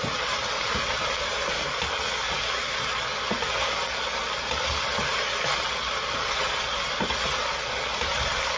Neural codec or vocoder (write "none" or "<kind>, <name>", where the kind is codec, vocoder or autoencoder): none